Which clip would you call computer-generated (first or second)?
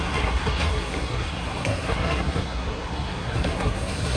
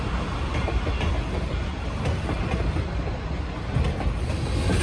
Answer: first